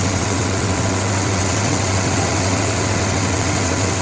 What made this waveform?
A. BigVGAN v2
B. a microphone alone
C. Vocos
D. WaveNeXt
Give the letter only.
D